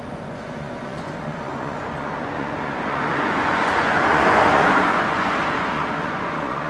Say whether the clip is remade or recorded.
remade